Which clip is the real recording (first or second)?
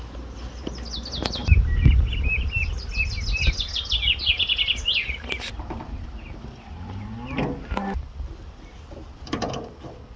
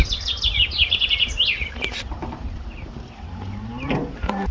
first